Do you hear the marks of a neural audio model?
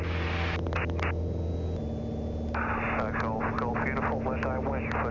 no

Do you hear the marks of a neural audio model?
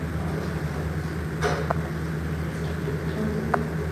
no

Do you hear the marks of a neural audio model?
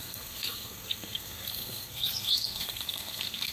yes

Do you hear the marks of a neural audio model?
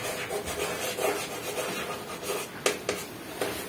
no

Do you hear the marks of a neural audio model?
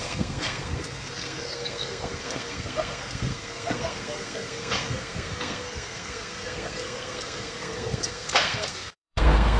yes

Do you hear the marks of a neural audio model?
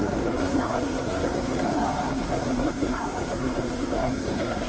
yes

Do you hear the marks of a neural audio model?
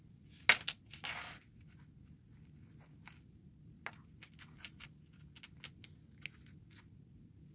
no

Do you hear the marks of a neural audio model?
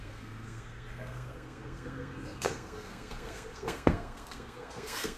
yes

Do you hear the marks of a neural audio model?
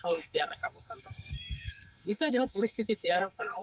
yes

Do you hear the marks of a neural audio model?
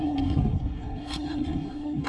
yes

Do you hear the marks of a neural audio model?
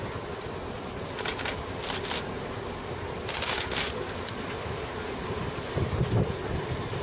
no